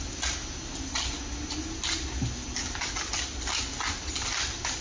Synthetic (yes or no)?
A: no